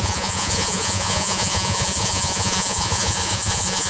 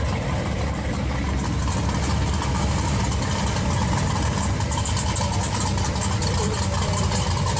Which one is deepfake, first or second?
first